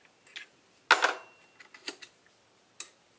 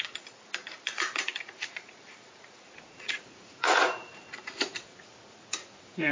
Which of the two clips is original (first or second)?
first